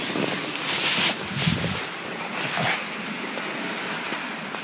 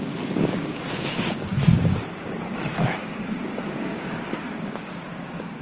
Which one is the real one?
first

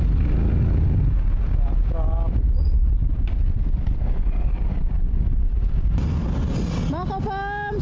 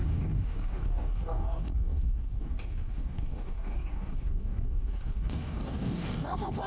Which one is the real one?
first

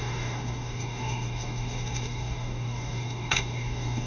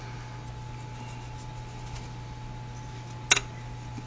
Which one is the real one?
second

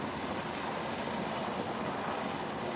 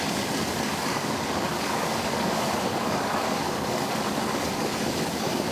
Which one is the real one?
first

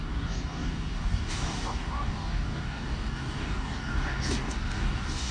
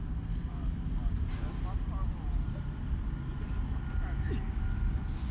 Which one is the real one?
second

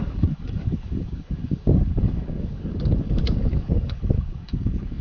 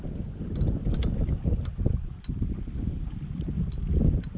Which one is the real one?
second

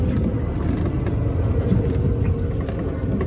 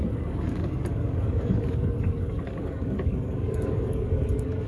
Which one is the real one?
first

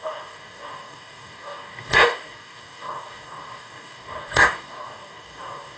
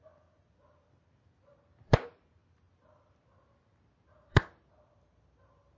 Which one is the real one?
second